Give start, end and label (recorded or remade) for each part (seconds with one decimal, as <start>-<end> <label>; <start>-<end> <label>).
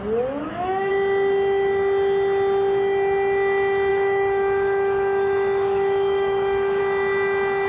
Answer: 0.0-0.4 recorded; 0.4-0.9 remade; 0.9-3.9 recorded; 3.9-6.8 remade; 6.8-7.7 recorded